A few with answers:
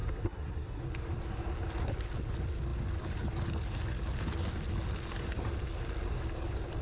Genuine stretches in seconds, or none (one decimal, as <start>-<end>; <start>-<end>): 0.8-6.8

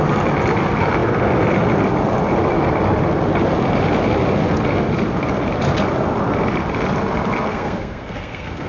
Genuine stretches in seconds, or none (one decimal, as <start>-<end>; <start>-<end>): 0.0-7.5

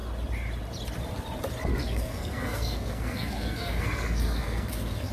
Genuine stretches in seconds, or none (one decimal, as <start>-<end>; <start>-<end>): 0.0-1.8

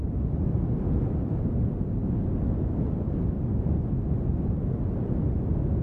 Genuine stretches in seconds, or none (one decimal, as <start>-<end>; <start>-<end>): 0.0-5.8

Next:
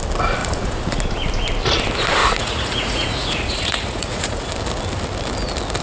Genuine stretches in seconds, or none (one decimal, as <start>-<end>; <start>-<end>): 0.0-0.4; 1.0-2.2; 4.5-5.8

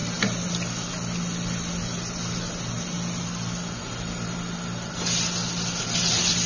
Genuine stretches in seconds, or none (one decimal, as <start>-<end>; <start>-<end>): 0.0-6.5